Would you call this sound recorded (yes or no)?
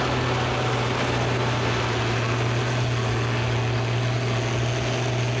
yes